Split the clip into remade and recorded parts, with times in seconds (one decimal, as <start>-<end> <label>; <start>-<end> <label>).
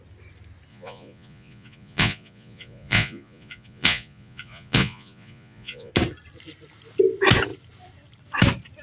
0.0-0.7 recorded; 0.7-5.9 remade; 5.9-8.8 recorded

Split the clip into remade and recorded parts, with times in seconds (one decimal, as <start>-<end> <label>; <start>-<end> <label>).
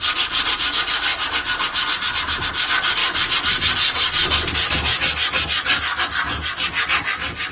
0.0-7.5 recorded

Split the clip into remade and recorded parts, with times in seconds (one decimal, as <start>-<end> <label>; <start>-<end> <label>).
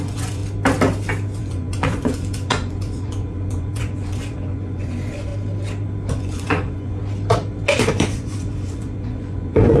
0.0-0.4 remade; 0.4-1.4 recorded; 1.4-5.3 remade; 5.3-6.1 recorded; 6.1-7.0 remade; 7.0-7.7 recorded; 7.7-9.8 remade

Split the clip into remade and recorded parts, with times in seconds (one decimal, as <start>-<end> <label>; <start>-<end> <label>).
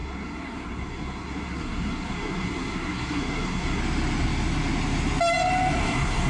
0.0-3.8 remade; 3.8-5.8 recorded; 5.8-6.3 remade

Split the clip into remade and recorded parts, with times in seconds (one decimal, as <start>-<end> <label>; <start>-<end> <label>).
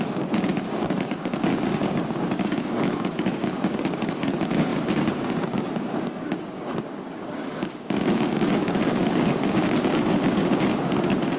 0.0-11.4 remade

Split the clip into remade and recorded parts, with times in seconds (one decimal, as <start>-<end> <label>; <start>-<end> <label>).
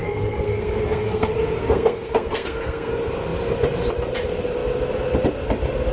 0.0-2.9 remade; 2.9-5.9 recorded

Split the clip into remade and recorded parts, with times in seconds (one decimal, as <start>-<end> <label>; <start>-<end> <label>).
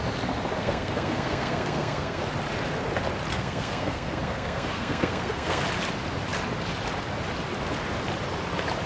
0.0-0.6 recorded; 0.6-2.2 remade; 2.2-3.3 recorded; 3.3-5.6 remade; 5.6-8.9 recorded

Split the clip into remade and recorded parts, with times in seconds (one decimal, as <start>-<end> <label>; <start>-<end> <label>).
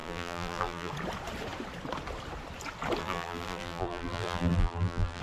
0.0-0.9 remade; 0.9-3.0 recorded; 3.0-5.2 remade